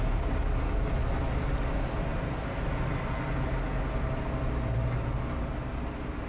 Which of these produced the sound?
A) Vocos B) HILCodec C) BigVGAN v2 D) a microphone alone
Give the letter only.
D